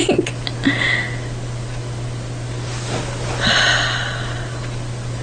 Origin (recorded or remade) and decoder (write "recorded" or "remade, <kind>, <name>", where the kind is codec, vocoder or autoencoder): recorded